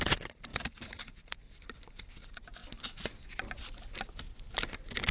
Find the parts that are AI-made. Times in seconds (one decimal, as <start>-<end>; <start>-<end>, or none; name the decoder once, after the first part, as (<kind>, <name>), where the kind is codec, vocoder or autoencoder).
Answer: none